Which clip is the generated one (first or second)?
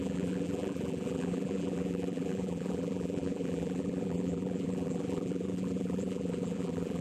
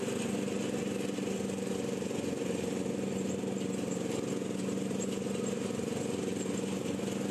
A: first